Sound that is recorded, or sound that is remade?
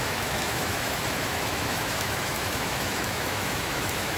remade